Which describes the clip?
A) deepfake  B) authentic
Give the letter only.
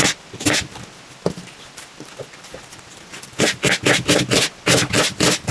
B